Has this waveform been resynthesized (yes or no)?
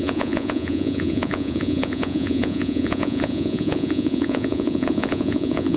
yes